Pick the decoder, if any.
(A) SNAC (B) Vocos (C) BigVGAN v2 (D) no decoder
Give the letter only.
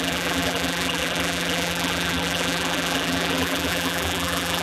C